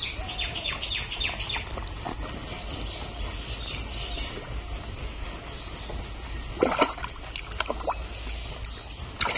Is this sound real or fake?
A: real